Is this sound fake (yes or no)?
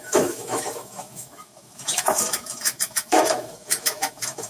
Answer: yes